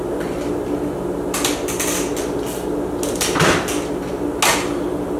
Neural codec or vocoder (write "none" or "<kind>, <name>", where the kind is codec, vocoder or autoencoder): none